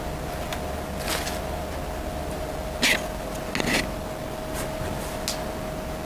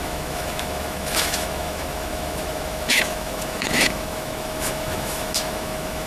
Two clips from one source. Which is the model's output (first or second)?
second